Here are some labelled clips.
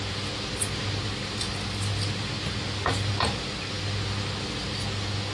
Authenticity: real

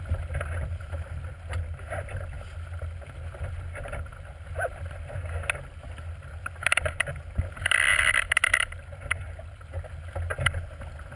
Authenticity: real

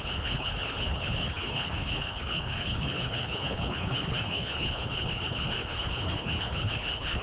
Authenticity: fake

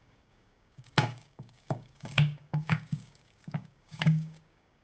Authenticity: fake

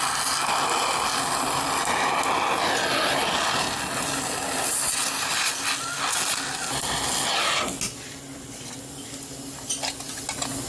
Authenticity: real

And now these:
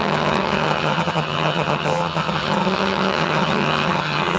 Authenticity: fake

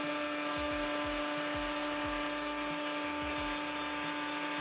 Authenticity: real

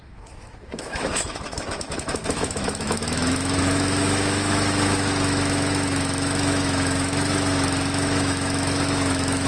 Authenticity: fake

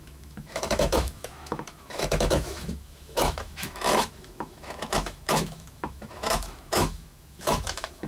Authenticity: fake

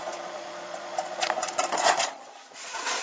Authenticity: fake